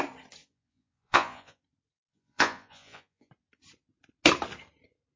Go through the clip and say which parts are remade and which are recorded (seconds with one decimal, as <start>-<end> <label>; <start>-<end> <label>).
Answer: 0.0-0.4 recorded; 0.4-1.6 remade; 1.6-2.1 recorded; 2.1-3.3 remade; 3.3-5.2 recorded